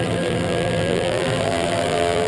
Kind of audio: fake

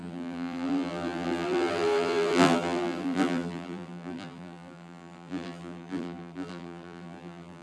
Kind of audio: fake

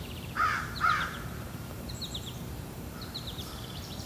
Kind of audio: fake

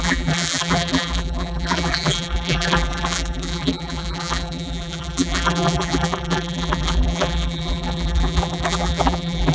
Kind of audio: fake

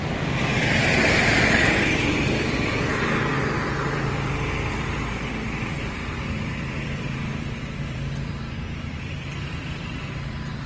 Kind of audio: fake